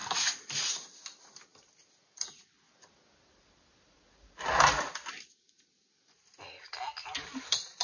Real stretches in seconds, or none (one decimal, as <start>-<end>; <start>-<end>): 0.0-7.8